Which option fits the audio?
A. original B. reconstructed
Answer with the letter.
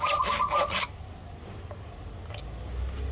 A